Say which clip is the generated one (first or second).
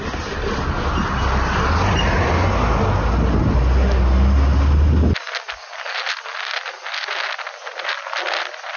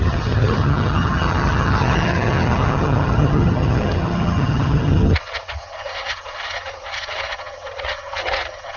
second